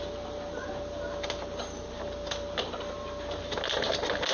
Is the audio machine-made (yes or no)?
no